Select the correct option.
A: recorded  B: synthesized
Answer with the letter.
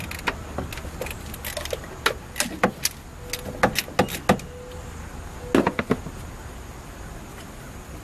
A